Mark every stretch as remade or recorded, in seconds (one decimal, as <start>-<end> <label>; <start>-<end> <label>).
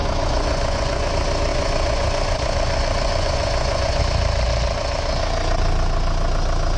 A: 0.0-1.1 remade; 1.1-1.5 recorded; 1.5-4.0 remade; 4.0-6.8 recorded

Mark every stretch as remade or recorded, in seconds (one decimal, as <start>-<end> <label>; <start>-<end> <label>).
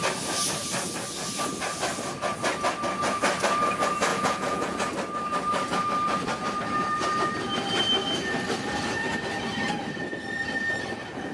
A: 0.0-4.1 recorded; 4.1-4.8 remade; 4.8-11.3 recorded